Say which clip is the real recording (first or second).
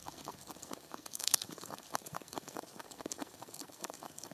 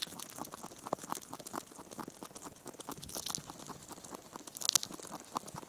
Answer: second